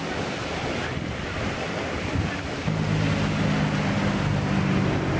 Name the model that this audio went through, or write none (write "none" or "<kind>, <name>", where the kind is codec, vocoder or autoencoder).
none